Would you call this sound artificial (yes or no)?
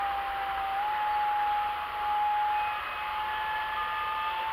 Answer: no